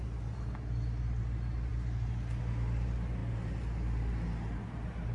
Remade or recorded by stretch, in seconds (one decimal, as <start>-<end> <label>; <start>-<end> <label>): 0.0-5.1 recorded